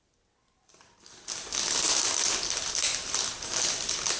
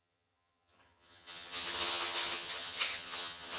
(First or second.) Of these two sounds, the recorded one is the first